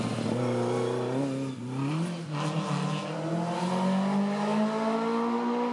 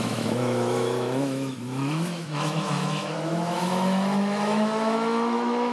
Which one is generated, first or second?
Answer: second